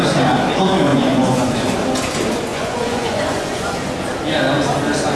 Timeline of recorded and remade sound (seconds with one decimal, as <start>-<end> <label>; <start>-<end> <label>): 0.0-0.9 recorded; 0.9-1.4 remade; 1.4-2.5 recorded; 2.5-3.9 remade; 3.9-5.2 recorded